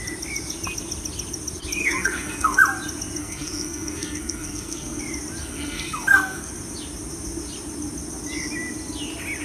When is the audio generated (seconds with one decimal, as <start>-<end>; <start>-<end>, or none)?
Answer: 1.8-2.6; 3.2-5.0; 5.4-6.5